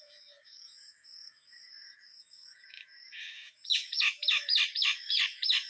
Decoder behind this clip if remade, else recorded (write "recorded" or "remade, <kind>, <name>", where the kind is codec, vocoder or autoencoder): remade, autoencoder, DAC-VAE